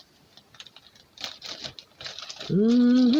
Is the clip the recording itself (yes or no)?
yes